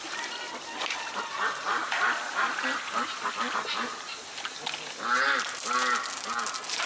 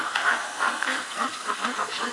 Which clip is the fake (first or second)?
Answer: second